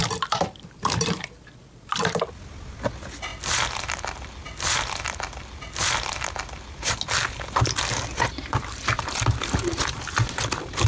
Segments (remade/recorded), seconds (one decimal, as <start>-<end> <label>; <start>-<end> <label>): 0.0-1.5 remade; 1.5-10.9 recorded